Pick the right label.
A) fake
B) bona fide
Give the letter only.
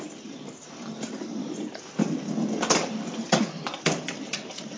B